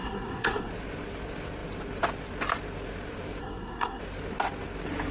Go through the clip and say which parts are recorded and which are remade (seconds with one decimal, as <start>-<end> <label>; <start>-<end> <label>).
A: 0.0-0.7 remade; 0.7-3.4 recorded; 3.4-4.0 remade; 4.0-5.1 recorded